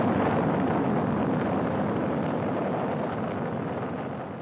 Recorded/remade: recorded